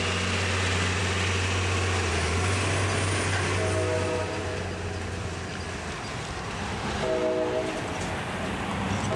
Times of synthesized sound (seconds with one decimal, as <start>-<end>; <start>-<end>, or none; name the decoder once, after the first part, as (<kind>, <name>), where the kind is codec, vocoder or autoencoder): none